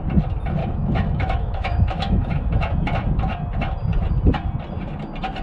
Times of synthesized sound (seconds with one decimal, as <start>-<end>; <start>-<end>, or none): 0.6-2.5